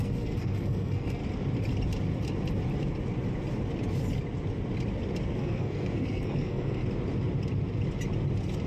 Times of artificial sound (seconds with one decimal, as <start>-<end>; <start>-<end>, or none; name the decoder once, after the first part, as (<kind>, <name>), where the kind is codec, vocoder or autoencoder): 0.0-1.2 (codec, SNAC); 5.3-6.8